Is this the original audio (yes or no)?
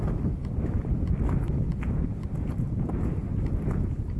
yes